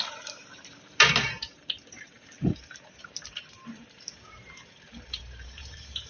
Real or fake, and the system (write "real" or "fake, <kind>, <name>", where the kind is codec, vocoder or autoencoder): fake, vocoder, BigVGAN v2